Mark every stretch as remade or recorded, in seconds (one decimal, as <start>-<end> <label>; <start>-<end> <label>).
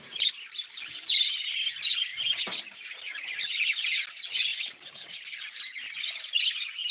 0.0-6.9 recorded